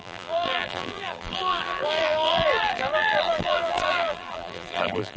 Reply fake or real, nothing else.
fake